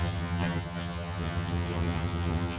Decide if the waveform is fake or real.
fake